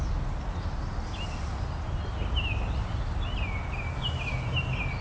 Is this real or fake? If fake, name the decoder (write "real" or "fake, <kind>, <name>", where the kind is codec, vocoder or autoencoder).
real